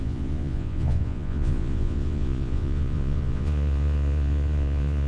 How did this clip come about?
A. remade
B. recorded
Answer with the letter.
A